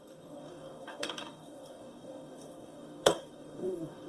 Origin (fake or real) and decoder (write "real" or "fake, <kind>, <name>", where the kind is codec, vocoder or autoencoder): fake, codec, DAC